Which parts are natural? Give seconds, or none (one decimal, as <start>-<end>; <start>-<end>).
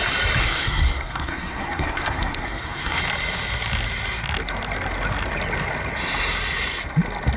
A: 0.0-0.4; 3.0-7.4